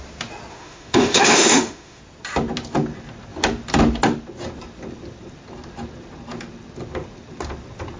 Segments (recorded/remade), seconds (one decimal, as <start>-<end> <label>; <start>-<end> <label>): 0.0-0.5 recorded; 0.5-2.0 remade; 2.0-8.0 recorded